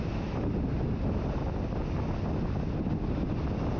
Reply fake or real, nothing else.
real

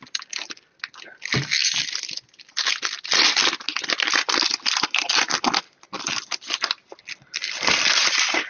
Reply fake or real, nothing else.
real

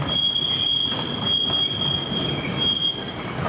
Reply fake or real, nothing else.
real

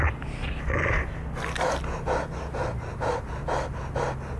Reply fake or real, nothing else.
real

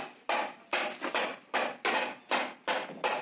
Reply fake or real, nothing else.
real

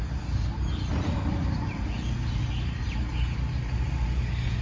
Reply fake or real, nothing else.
real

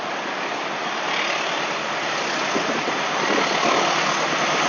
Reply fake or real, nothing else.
real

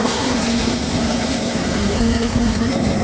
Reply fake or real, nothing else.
fake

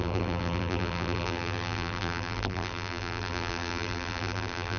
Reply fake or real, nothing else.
fake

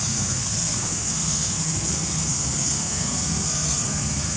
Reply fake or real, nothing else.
fake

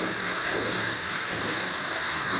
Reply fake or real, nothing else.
fake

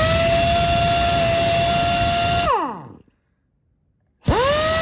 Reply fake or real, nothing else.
real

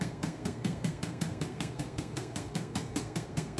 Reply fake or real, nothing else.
fake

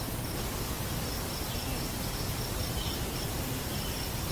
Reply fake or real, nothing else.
real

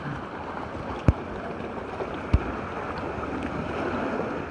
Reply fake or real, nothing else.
real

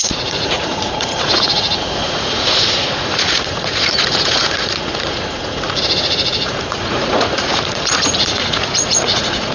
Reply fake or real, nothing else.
fake